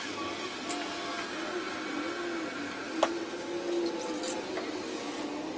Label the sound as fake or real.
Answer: real